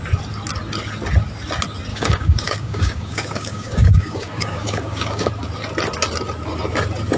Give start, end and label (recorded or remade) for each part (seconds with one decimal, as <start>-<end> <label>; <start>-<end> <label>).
0.0-1.9 recorded; 1.9-5.3 remade; 5.3-7.2 recorded